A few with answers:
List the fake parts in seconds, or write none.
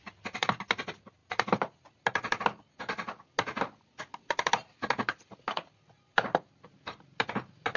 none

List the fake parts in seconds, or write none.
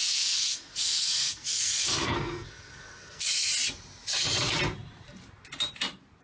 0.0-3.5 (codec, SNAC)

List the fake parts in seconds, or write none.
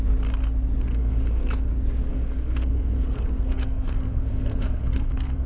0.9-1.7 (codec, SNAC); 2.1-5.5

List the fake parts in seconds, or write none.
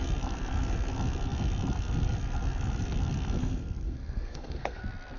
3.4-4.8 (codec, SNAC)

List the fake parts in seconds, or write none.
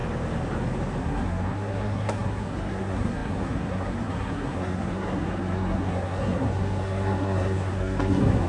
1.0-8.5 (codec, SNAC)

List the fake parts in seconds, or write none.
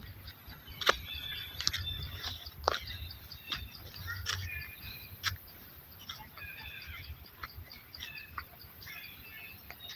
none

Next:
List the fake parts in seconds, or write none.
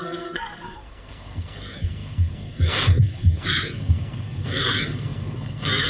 0.0-5.9 (codec, SNAC)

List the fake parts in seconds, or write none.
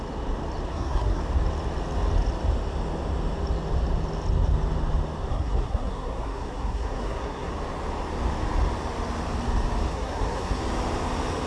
0.7-1.2 (codec, SNAC); 5.3-7.5; 9.9-10.6